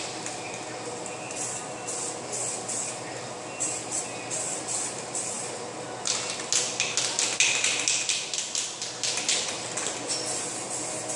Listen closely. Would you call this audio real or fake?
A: real